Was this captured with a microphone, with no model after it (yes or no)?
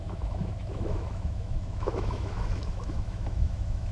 no